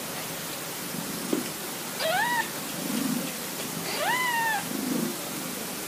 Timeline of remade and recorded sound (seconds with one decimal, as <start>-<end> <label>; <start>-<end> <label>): 0.0-5.9 recorded